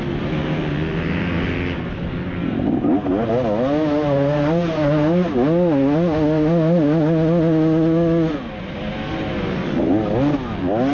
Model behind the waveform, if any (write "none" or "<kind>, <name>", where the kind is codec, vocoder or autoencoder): none